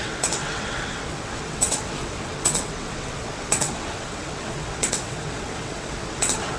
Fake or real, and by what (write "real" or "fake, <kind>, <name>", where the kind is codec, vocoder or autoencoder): fake, vocoder, WaveNeXt